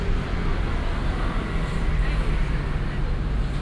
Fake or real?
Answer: real